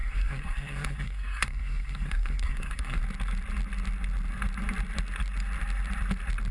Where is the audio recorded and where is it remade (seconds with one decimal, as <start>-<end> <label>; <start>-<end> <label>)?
0.0-3.0 remade; 3.0-6.5 recorded